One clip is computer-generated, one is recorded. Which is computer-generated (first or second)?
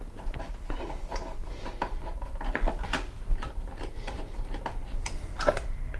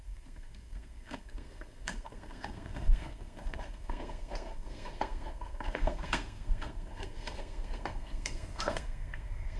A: second